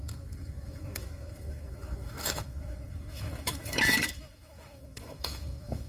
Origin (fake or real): fake